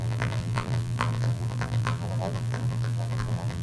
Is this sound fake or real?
fake